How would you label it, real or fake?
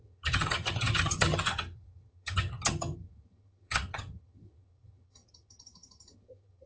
fake